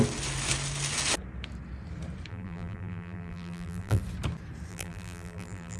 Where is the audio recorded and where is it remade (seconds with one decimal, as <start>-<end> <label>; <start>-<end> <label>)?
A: 0.0-2.3 recorded; 2.3-4.0 remade; 4.0-4.7 recorded; 4.7-5.8 remade